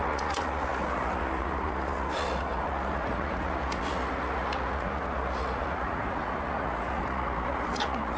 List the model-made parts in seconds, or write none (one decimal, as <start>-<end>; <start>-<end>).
0.0-8.2